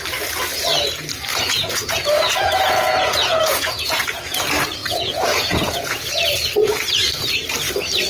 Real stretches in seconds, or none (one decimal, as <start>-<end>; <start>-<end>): 0.0-1.3; 4.3-4.8; 6.1-8.1